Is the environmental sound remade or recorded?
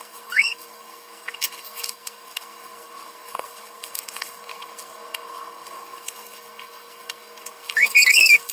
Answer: remade